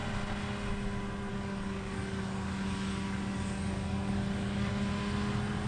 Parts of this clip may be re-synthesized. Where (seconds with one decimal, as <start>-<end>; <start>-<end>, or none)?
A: 1.3-4.7